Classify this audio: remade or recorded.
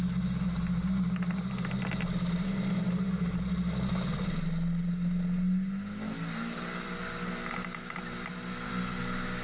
recorded